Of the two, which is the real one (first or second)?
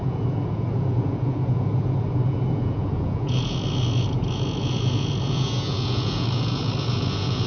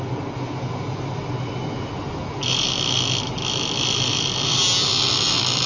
second